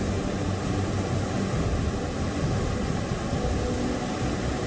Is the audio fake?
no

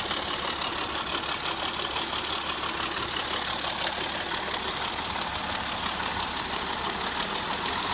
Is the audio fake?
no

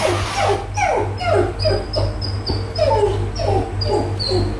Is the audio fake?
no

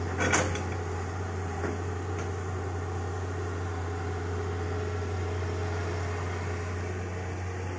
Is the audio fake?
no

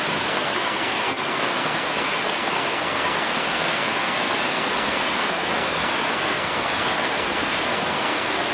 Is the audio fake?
yes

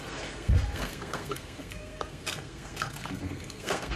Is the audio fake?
yes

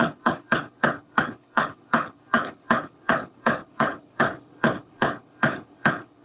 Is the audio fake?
yes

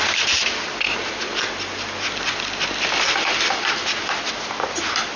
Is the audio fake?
no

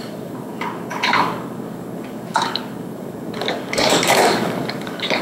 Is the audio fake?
yes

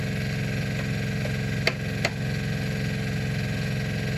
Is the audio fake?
no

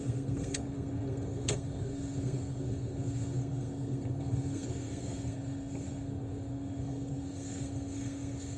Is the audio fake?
yes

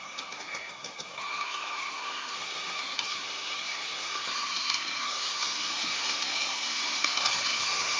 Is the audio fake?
yes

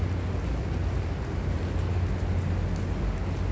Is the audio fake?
no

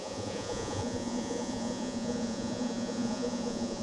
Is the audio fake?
yes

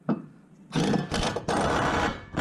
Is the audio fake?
yes